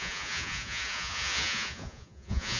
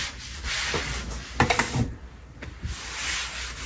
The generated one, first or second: first